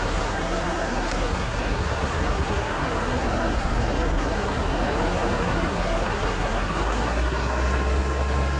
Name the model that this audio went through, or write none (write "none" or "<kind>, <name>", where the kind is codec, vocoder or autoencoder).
codec, SNAC